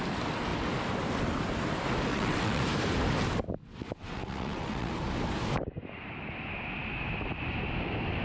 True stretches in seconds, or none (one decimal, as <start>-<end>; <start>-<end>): 0.0-2.1; 2.6-3.6; 4.9-8.2